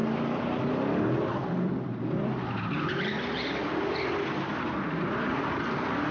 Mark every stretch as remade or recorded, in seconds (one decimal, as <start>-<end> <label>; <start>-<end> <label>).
0.0-1.4 recorded; 1.4-2.1 remade; 2.1-3.6 recorded; 3.6-5.3 remade; 5.3-6.1 recorded